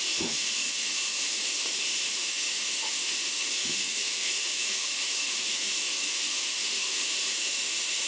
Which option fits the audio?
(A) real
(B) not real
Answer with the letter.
B